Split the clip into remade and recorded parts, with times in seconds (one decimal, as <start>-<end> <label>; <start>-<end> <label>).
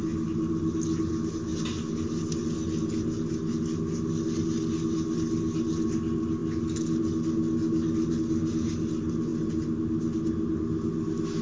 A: 0.0-11.4 recorded